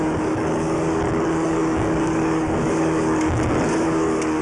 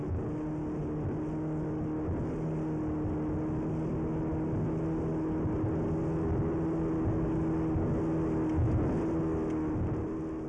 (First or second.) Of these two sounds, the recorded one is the second